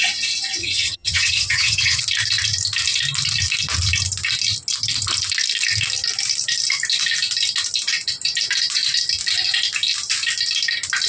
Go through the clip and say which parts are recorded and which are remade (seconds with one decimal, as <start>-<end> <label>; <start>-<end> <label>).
0.0-0.6 recorded; 0.6-2.0 remade; 2.0-11.1 recorded